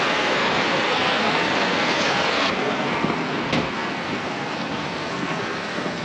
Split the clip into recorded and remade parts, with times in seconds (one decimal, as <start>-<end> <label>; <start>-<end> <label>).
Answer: 0.0-6.0 remade